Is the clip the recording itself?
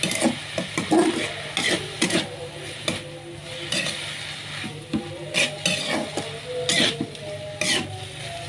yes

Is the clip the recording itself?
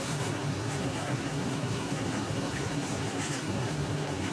no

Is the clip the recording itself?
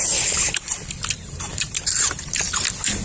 yes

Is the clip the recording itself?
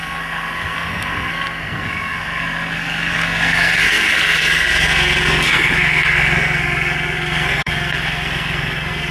no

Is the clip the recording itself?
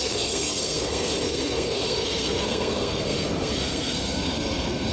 no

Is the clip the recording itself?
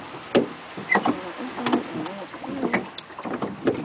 yes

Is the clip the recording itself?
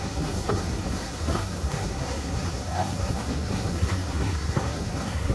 no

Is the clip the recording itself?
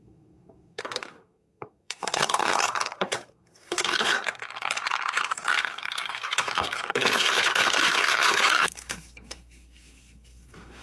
no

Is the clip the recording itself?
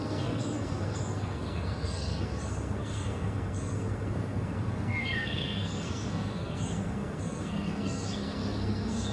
no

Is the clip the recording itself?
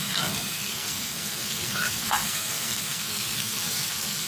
no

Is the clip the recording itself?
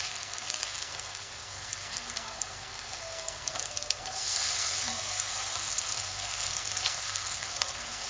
no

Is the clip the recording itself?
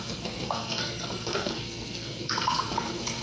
no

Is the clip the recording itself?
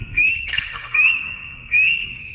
no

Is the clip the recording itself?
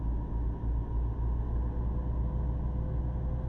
yes